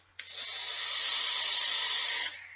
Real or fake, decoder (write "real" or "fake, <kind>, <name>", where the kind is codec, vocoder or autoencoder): real